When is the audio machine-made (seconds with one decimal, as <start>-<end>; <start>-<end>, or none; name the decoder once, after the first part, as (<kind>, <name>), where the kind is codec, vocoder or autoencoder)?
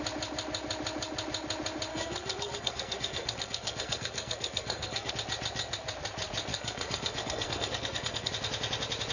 1.9-5.1 (codec, SNAC); 6.5-8.3